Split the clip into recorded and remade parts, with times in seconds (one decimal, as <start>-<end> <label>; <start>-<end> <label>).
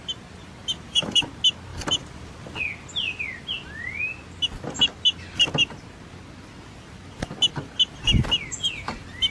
0.0-0.6 recorded; 0.6-1.2 remade; 1.2-1.7 recorded; 1.7-2.6 remade; 2.6-9.3 recorded